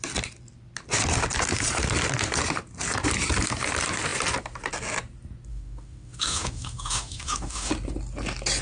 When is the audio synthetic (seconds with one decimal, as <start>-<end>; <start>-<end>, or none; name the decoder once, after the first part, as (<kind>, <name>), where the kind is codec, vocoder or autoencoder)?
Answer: 5.5-7.7 (autoencoder, DAC-VAE)